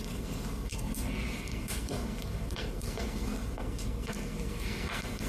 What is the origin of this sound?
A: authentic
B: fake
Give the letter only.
B